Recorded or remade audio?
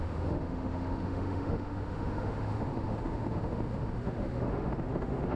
remade